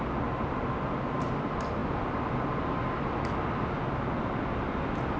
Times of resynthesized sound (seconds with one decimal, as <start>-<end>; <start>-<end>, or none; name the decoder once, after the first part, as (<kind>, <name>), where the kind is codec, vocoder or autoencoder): none